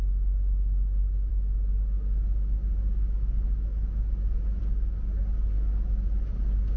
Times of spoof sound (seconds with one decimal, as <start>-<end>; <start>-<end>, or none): none